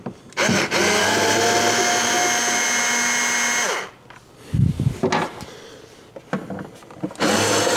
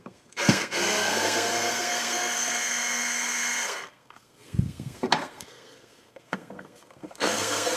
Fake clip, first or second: second